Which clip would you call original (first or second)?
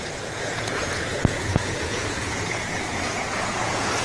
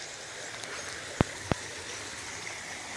second